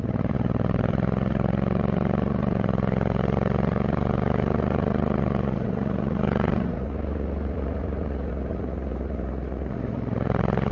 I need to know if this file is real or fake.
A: fake